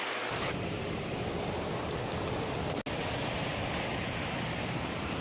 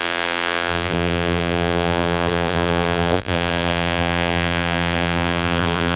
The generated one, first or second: second